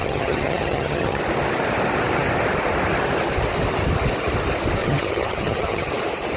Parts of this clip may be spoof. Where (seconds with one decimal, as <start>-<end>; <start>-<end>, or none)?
0.0-1.2; 4.8-5.9